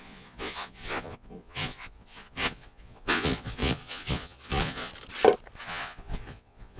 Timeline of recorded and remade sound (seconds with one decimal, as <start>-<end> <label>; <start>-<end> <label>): 0.0-4.9 remade; 4.9-5.6 recorded; 5.6-6.8 remade